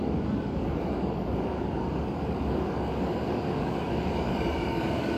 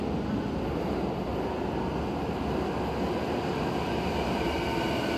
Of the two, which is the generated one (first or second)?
first